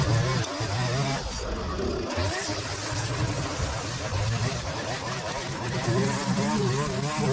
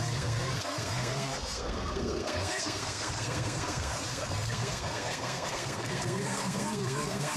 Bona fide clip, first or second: first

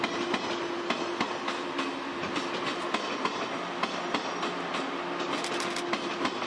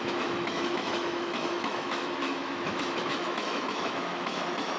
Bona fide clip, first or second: first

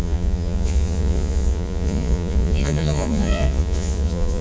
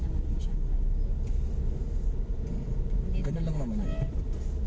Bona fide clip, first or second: second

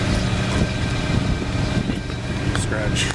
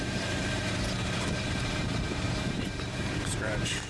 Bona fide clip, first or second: first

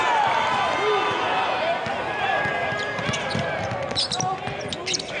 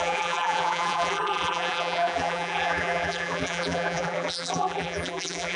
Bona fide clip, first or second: first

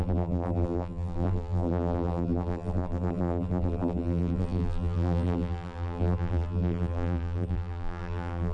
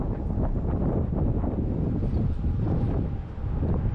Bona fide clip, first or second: second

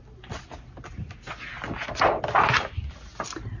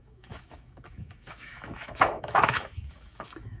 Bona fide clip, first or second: first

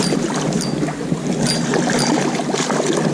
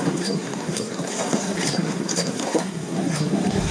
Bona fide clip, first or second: first